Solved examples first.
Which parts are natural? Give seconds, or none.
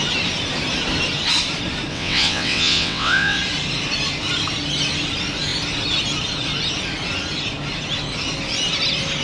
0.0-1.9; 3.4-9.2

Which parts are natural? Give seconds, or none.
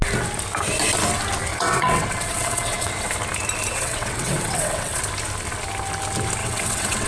0.0-1.5; 3.1-3.7; 5.0-6.4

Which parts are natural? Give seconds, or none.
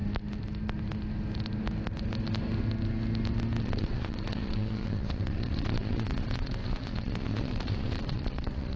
0.0-3.6